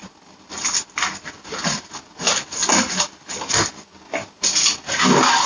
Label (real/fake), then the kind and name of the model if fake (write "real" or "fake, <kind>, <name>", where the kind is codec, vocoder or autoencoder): real